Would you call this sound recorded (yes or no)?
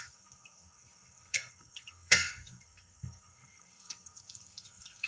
no